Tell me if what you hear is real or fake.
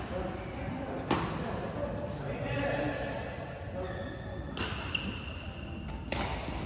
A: real